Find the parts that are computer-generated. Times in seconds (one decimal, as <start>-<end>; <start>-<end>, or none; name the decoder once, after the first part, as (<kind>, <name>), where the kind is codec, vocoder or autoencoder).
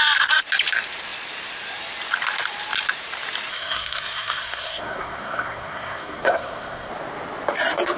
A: 3.5-6.9 (codec, SNAC)